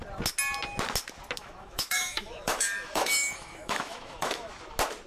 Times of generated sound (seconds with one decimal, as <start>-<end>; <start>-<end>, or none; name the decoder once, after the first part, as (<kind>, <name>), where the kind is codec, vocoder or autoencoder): 1.4-4.5 (autoencoder, DAC-VAE)